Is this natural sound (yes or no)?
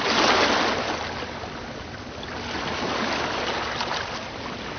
yes